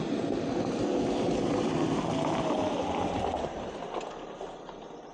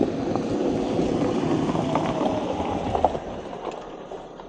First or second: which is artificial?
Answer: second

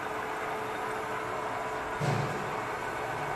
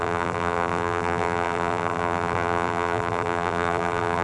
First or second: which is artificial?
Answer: second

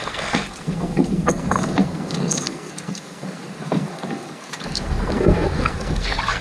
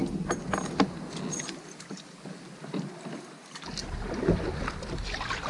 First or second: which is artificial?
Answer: first